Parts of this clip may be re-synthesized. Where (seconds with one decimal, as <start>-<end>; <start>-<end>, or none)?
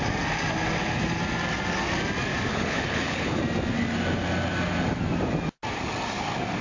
2.5-3.4